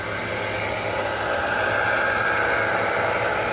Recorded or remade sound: recorded